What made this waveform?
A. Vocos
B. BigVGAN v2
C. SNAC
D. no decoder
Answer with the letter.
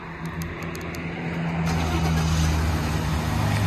D